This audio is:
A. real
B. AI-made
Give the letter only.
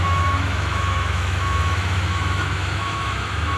B